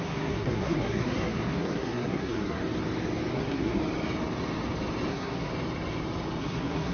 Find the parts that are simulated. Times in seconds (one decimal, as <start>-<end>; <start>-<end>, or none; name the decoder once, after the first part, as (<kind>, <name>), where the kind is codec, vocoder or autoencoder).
0.0-2.6 (codec, SNAC); 3.3-3.8; 5.1-5.5; 6.4-6.9